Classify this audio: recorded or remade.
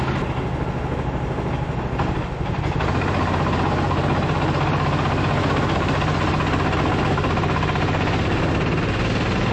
recorded